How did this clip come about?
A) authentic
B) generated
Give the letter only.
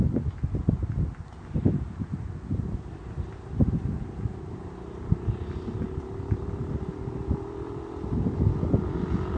A